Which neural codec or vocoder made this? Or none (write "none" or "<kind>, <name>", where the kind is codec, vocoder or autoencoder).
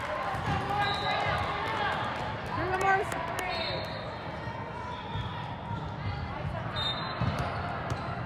none